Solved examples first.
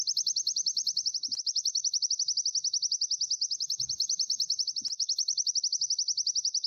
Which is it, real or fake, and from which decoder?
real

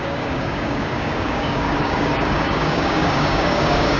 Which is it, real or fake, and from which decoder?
fake, codec, DAC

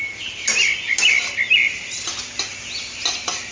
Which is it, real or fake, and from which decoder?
real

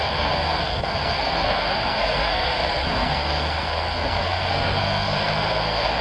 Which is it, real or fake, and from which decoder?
fake, codec, SNAC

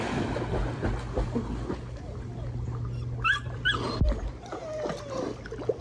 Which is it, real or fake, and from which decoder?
real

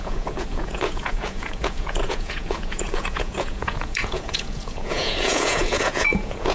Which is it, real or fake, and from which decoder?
fake, vocoder, Vocos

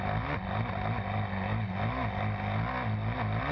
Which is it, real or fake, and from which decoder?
real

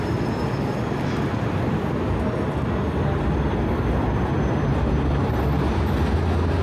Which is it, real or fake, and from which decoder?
real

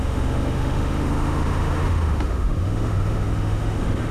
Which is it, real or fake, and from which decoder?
fake, autoencoder, DAC-VAE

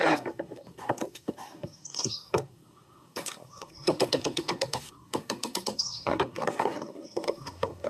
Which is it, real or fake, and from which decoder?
fake, codec, SNAC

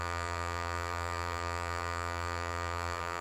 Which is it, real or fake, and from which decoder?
fake, vocoder, BigVGAN v2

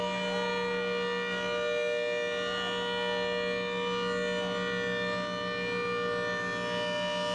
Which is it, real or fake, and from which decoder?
real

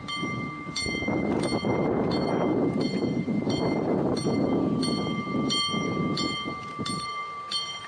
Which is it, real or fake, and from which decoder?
fake, vocoder, BigVGAN v2